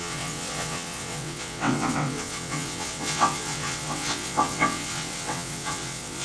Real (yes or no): no